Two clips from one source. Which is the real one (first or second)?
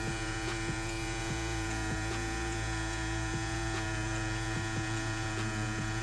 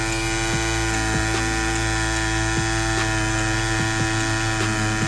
second